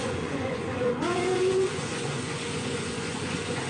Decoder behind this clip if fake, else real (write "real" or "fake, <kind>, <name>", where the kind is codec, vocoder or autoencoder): fake, vocoder, Vocos